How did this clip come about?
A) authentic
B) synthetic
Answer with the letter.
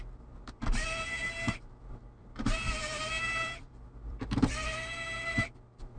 B